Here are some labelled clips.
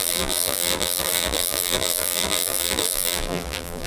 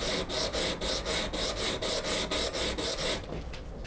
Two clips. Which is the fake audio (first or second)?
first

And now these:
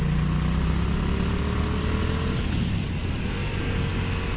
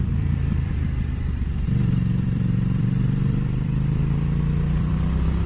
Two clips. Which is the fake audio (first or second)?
second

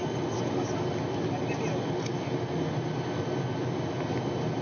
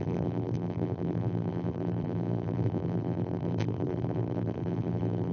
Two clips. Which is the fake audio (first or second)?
second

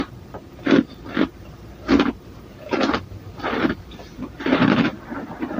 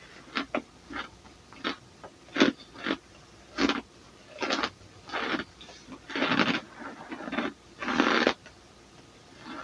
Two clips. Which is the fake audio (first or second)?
first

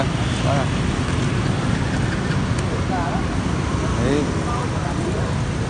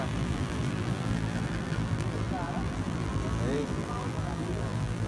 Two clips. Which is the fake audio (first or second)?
second